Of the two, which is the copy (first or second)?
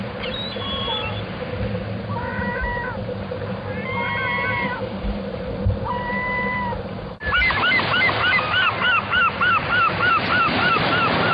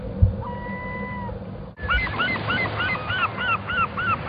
first